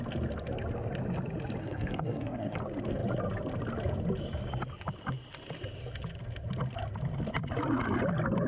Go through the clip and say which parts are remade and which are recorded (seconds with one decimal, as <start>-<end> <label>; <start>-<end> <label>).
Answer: 0.0-1.6 recorded; 1.6-2.6 remade; 2.6-8.5 recorded